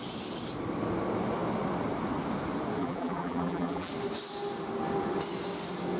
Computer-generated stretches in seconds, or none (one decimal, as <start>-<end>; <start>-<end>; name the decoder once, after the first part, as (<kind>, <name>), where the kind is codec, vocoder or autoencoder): 2.8-3.9 (vocoder, BigVGAN v2)